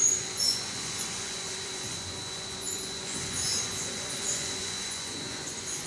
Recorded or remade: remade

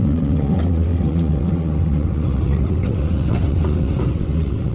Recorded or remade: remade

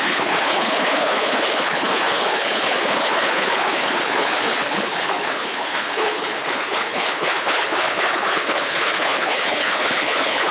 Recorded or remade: remade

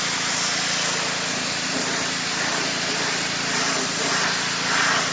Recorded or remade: recorded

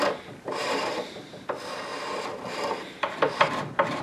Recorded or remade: remade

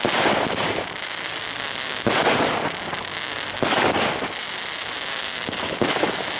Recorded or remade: recorded